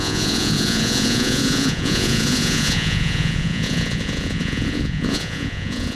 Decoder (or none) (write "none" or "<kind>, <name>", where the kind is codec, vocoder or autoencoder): vocoder, Vocos